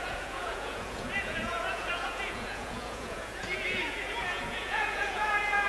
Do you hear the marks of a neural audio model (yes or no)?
yes